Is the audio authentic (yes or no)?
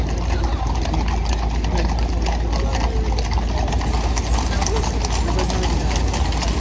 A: yes